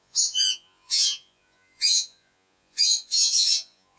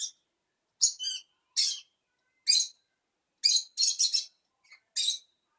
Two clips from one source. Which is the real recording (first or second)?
second